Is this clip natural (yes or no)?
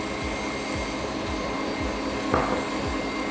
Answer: yes